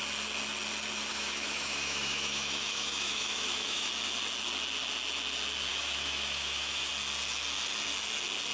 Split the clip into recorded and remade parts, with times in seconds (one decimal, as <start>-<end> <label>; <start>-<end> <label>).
0.0-1.1 recorded; 1.1-3.9 remade; 3.9-5.7 recorded; 5.7-6.9 remade; 6.9-8.5 recorded

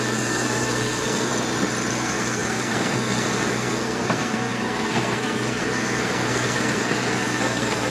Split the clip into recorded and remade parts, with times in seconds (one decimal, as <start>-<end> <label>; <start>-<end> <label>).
0.0-1.3 remade; 1.3-1.9 recorded; 1.9-7.9 remade

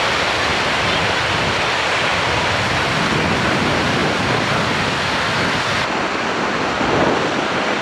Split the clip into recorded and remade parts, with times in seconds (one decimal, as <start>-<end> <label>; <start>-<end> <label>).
0.0-7.8 recorded

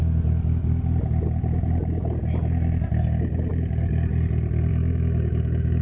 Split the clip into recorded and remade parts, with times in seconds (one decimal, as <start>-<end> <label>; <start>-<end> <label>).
0.0-4.7 recorded; 4.7-5.8 remade